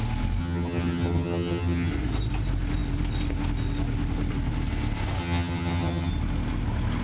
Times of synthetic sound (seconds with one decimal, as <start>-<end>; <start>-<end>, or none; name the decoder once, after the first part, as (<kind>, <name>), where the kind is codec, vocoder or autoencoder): 0.4-1.9 (vocoder, HiFi-GAN); 5.2-6.1